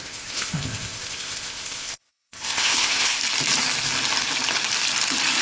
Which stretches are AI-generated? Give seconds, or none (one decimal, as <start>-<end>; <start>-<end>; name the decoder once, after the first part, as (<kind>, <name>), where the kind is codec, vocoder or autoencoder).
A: 0.0-3.2 (codec, ZipCodec)